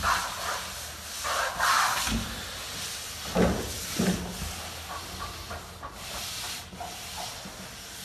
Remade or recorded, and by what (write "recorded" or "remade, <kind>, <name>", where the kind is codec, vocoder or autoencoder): recorded